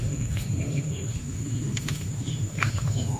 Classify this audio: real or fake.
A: fake